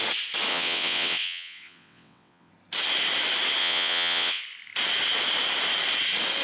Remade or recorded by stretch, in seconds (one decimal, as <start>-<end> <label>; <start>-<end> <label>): 0.0-0.5 recorded; 0.5-2.5 remade; 2.5-3.6 recorded; 3.6-4.4 remade; 4.4-6.4 recorded

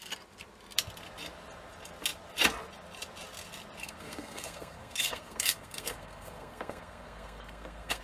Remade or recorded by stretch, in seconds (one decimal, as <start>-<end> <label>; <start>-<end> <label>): 0.0-3.8 recorded; 3.8-8.0 remade

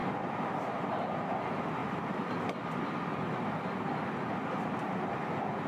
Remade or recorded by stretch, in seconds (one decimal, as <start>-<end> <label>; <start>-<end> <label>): 0.0-0.6 recorded; 0.6-1.8 remade; 1.8-5.1 recorded; 5.1-5.7 remade

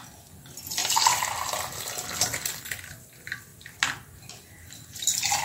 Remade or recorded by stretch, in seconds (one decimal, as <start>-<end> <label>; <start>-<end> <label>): 0.0-5.4 recorded

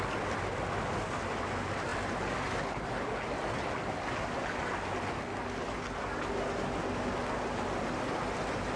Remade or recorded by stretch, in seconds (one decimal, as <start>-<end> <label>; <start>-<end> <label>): 0.0-8.8 recorded

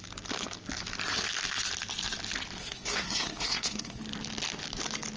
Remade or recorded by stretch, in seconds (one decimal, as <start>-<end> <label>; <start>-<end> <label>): 0.0-2.6 recorded; 2.6-4.0 remade; 4.0-5.2 recorded

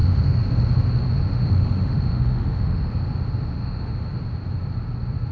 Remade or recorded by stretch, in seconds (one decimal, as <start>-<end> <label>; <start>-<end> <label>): 0.0-0.6 remade; 0.6-1.3 recorded; 1.3-2.9 remade; 2.9-3.6 recorded; 3.6-4.2 remade; 4.2-5.3 recorded